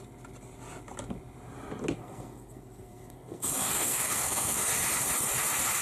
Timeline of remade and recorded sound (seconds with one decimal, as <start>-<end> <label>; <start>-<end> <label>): 0.0-2.0 recorded; 2.0-4.7 remade; 4.7-5.8 recorded